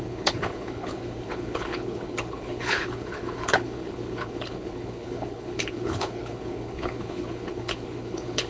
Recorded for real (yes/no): no